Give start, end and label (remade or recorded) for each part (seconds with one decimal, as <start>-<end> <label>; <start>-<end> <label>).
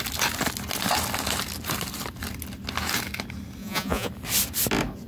0.0-3.6 recorded; 3.6-4.1 remade; 4.1-5.1 recorded